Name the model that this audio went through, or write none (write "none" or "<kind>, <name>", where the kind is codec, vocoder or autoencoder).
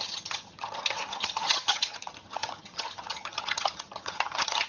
vocoder, HiFi-GAN